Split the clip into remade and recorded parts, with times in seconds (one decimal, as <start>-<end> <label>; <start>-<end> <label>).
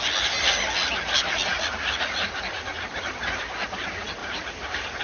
0.0-4.2 recorded; 4.2-5.0 remade